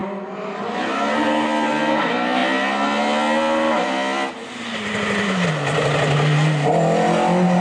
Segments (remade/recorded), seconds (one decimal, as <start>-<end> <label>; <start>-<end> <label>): 0.0-7.6 recorded